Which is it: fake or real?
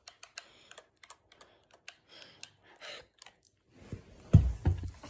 real